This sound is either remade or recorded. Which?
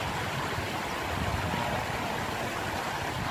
recorded